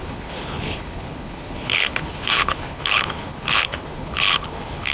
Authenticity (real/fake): fake